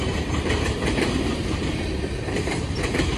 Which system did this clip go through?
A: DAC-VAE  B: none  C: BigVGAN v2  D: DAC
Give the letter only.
C